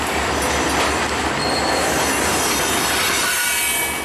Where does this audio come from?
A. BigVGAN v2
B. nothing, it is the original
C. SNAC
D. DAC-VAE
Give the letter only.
B